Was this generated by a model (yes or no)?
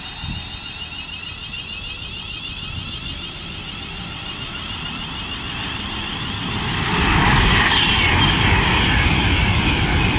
no